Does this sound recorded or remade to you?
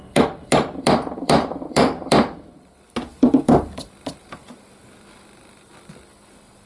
remade